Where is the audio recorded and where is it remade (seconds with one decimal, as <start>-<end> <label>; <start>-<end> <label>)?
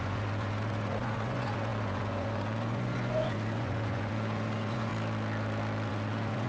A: 0.0-4.9 remade; 4.9-5.9 recorded; 5.9-6.5 remade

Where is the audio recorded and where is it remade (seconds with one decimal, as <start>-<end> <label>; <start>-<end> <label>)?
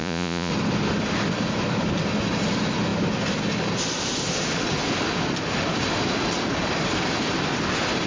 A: 0.0-0.5 remade; 0.5-8.1 recorded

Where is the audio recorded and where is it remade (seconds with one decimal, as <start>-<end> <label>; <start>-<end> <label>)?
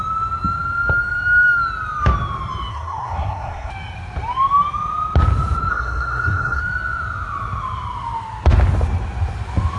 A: 0.0-2.7 recorded; 2.7-3.7 remade; 3.7-5.7 recorded; 5.7-6.6 remade; 6.6-9.8 recorded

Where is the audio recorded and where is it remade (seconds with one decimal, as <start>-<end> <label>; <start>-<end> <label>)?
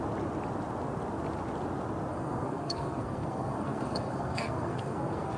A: 0.0-2.1 recorded; 2.1-5.4 remade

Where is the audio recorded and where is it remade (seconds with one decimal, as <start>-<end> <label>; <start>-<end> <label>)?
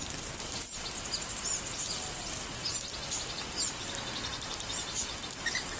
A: 0.0-5.8 recorded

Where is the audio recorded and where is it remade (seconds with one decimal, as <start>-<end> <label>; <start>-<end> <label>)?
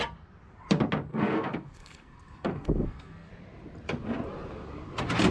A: 0.0-1.1 recorded; 1.1-3.3 remade; 3.3-5.3 recorded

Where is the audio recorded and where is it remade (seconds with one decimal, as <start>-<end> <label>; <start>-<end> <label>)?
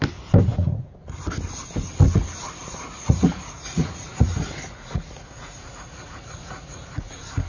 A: 0.0-0.5 recorded; 0.5-1.2 remade; 1.2-2.6 recorded; 2.6-7.1 remade; 7.1-7.5 recorded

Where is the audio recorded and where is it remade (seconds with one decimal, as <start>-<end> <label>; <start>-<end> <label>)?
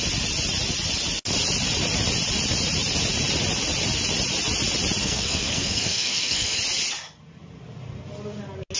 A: 0.0-5.0 recorded; 5.0-6.6 remade; 6.6-8.8 recorded